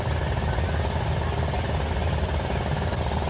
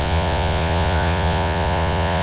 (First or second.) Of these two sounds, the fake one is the second